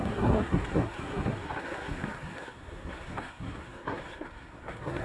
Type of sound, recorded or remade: remade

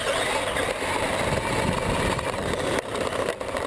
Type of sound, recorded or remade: recorded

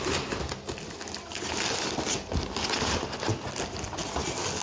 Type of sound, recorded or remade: recorded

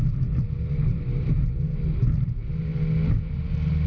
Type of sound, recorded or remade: recorded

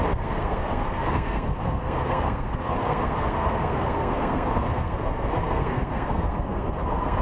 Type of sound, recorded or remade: remade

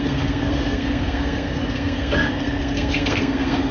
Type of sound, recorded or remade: remade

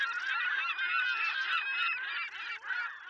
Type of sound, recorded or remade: recorded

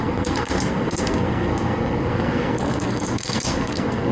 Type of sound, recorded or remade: remade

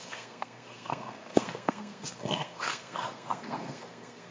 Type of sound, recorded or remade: remade